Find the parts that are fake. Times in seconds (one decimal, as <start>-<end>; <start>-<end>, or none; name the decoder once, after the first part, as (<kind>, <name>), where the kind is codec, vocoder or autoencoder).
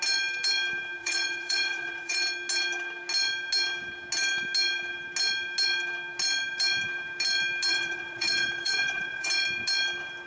1.0-2.2 (vocoder, Vocos); 7.7-9.3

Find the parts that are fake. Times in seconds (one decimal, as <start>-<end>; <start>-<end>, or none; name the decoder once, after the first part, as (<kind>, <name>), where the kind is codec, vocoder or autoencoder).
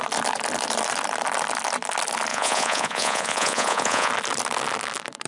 2.3-4.1 (vocoder, Vocos)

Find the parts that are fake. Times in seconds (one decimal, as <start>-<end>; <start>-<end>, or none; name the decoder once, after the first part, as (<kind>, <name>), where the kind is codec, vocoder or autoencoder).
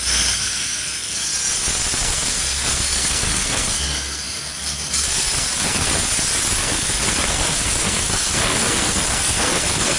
0.0-1.3 (codec, SNAC); 2.0-5.9; 6.6-10.0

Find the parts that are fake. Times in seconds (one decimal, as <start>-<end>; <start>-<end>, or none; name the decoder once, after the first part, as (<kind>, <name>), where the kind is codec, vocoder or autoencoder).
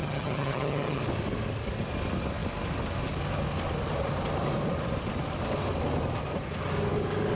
0.0-1.0 (vocoder, HiFi-GAN)